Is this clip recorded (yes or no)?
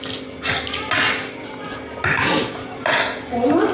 yes